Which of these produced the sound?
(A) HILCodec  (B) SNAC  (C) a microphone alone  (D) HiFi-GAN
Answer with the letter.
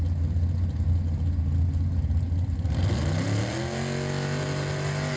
C